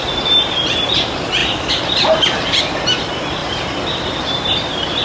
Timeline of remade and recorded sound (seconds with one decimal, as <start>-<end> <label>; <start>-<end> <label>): 0.0-1.4 recorded; 1.4-2.6 remade; 2.6-3.4 recorded; 3.4-5.0 remade